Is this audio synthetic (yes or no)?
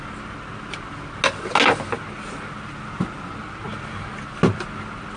no